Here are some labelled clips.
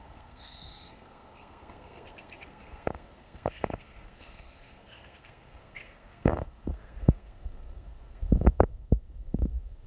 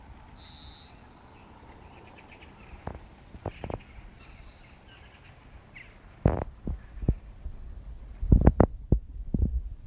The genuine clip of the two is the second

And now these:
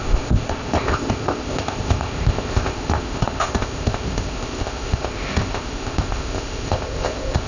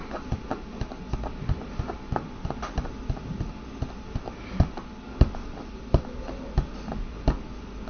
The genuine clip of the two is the second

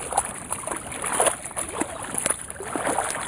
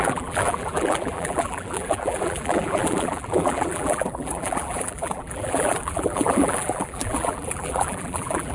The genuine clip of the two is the first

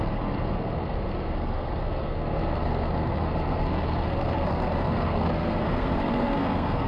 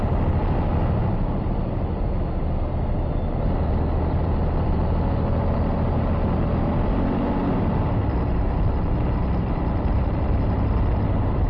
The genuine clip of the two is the second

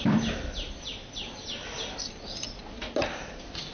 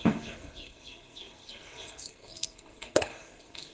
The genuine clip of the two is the first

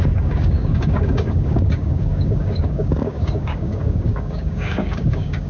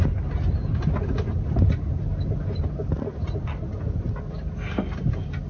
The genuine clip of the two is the second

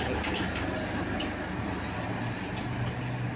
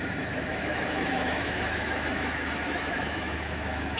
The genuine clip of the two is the first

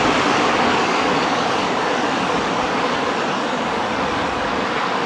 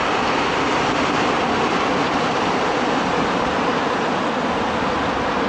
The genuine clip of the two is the second